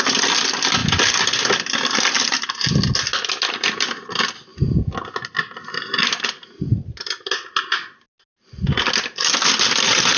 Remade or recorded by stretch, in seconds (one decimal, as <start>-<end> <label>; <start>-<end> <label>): 0.0-10.2 recorded